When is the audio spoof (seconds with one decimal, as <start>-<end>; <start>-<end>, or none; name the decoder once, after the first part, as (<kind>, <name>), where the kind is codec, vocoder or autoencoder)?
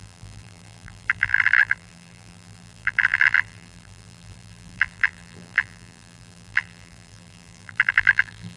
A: 0.0-8.6 (vocoder, BigVGAN v2)